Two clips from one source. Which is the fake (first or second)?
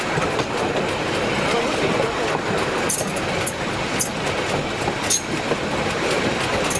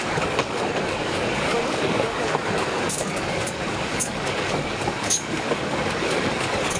second